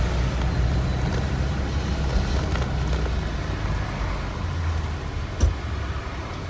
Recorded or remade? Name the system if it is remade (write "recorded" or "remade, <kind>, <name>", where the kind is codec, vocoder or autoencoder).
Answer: recorded